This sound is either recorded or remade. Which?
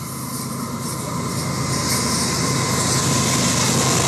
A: recorded